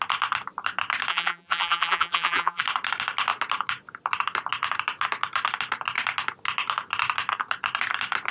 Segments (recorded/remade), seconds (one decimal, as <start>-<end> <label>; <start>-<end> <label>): 0.0-1.1 recorded; 1.1-2.6 remade; 2.6-8.3 recorded